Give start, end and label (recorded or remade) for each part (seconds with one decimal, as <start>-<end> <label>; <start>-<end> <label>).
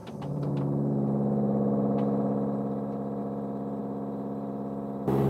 0.0-5.3 remade